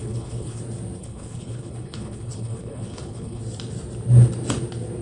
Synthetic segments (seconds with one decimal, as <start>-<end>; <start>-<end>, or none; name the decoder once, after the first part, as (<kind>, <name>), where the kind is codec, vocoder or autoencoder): 0.0-0.6 (codec, HILCodec); 1.0-3.4